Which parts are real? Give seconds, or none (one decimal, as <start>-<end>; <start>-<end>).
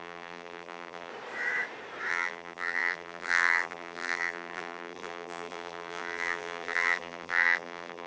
1.1-2.1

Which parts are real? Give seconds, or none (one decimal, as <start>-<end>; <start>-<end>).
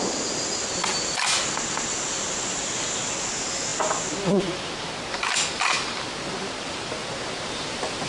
0.0-8.1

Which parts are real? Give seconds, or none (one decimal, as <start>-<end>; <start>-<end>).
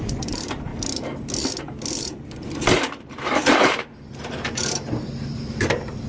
0.7-1.6